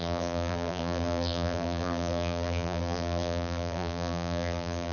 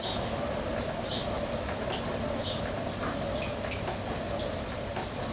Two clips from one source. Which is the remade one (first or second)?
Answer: first